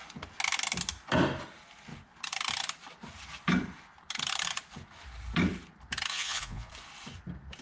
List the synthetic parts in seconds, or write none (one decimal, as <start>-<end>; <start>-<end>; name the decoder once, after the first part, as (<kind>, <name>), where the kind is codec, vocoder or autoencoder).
6.1-6.7 (vocoder, Vocos)

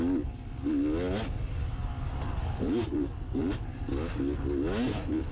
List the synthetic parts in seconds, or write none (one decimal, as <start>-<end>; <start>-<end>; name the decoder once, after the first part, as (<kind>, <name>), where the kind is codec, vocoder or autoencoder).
none

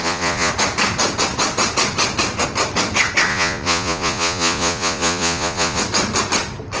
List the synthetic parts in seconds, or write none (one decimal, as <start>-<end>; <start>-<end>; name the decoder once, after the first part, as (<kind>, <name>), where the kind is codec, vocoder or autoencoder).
0.0-0.5 (vocoder, Vocos); 3.3-5.8

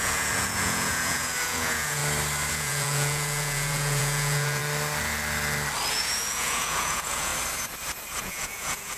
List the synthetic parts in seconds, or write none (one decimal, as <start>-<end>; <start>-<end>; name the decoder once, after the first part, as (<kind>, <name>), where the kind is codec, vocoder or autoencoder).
0.0-2.0 (vocoder, Vocos); 2.5-4.6; 5.9-7.3; 8.2-9.0